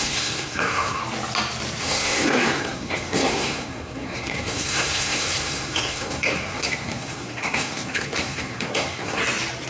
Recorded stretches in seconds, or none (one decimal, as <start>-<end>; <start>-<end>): 1.0-1.8; 9.2-9.7